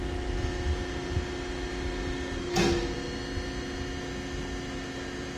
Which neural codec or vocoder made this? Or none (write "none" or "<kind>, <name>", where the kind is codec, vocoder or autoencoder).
none